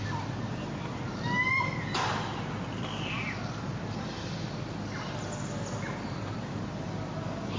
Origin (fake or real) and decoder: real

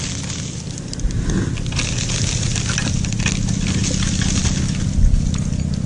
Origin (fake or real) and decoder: real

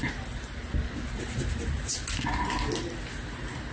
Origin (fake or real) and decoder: real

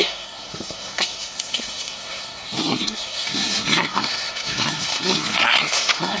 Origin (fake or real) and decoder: fake, codec, SNAC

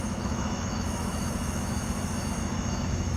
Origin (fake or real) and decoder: fake, autoencoder, DAC-VAE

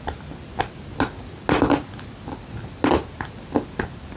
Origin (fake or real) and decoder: real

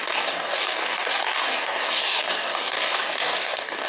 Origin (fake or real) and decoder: fake, codec, DAC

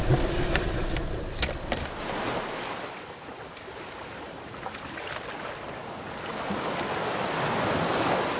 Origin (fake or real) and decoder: real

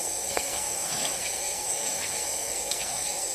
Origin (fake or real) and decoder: fake, codec, SNAC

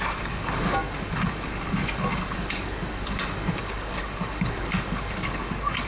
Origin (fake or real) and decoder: fake, codec, DAC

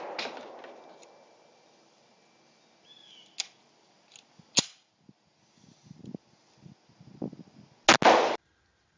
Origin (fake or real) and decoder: real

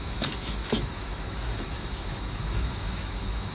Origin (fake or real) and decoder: fake, autoencoder, DAC-VAE